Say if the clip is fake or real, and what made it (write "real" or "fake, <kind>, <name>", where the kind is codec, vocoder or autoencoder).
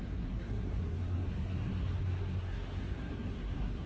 fake, codec, SNAC